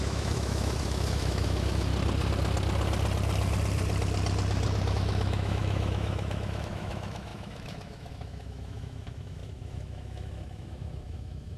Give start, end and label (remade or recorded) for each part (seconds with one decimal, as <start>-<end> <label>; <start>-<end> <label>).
0.0-1.9 remade; 1.9-4.9 recorded; 4.9-11.6 remade

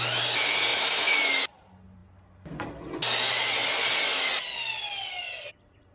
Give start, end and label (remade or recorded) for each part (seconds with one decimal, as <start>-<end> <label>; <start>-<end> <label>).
0.0-0.7 recorded; 0.7-1.3 remade; 1.3-5.9 recorded

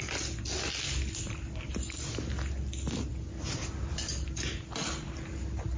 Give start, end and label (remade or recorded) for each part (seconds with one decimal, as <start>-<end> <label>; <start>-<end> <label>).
0.0-5.8 recorded